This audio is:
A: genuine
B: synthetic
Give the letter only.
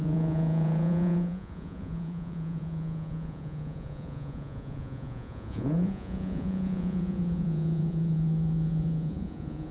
B